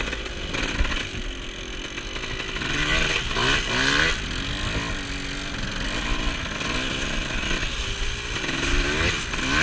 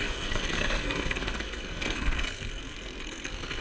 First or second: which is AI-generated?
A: second